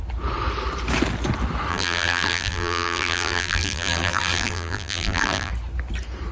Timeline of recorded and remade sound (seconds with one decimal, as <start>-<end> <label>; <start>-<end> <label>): 0.0-1.7 recorded; 1.7-5.5 remade; 5.5-6.3 recorded